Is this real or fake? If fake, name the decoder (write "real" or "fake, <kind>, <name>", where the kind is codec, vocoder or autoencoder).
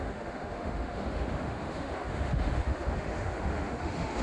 fake, autoencoder, DAC-VAE